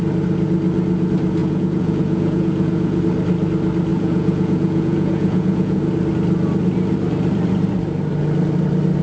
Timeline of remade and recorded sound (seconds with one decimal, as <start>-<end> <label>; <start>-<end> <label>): 0.0-1.4 recorded; 1.4-3.0 remade; 3.0-3.9 recorded; 3.9-5.8 remade; 5.8-9.0 recorded